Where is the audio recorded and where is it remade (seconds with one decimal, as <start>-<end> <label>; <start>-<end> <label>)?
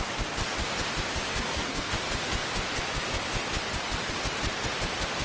0.0-1.3 recorded; 1.3-1.9 remade; 1.9-5.2 recorded